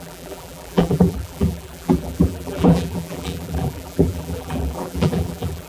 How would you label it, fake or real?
fake